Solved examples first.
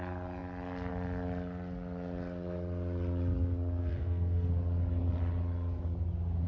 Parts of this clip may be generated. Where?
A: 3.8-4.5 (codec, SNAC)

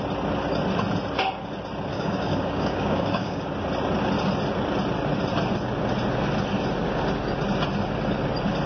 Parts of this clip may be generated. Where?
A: 1.9-3.5 (codec, DAC)

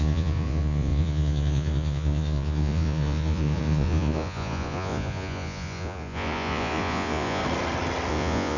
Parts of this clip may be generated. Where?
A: 0.0-7.4 (vocoder, Vocos); 8.1-8.6